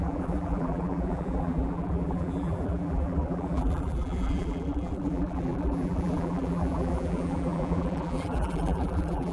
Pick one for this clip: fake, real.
fake